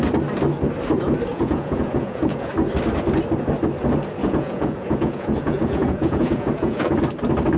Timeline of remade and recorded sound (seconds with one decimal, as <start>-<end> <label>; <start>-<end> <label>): 0.0-1.3 recorded; 1.3-2.5 remade; 2.5-4.2 recorded; 4.2-7.0 remade; 7.0-7.6 recorded